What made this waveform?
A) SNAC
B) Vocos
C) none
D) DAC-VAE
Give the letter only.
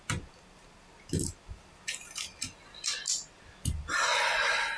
C